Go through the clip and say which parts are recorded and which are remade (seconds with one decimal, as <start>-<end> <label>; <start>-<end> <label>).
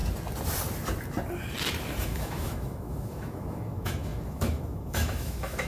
0.0-2.0 recorded; 2.0-5.7 remade